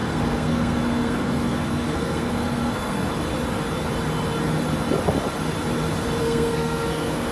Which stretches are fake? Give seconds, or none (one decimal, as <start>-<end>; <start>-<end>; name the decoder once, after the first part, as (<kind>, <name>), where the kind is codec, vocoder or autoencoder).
0.0-3.1 (codec, SNAC); 6.2-7.3